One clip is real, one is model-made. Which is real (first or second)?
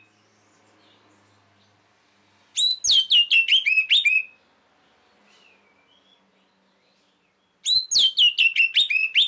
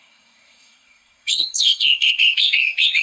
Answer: first